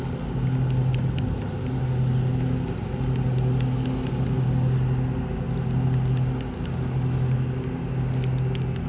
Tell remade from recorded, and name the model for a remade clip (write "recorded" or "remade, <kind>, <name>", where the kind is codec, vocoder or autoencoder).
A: recorded